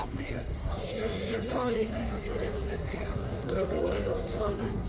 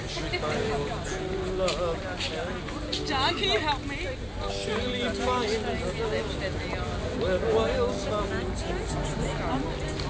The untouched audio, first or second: second